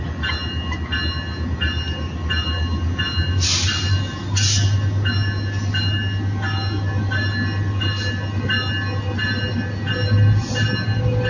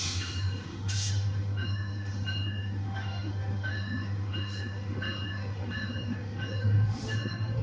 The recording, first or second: first